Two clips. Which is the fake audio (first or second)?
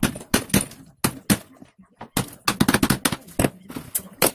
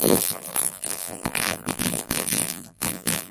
second